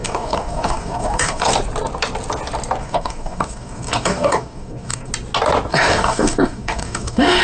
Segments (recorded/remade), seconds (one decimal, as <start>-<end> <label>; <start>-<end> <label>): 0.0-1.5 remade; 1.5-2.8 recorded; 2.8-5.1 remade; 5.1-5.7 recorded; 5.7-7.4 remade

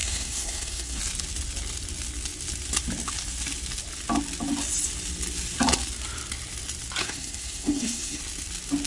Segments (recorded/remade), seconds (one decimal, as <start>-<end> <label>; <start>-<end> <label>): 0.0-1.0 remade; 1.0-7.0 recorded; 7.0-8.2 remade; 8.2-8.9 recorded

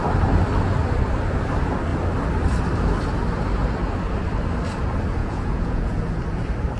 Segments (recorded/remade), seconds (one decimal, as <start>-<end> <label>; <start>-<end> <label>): 0.0-5.2 recorded; 5.2-6.1 remade; 6.1-6.8 recorded